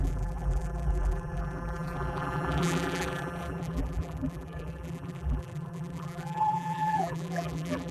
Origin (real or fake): fake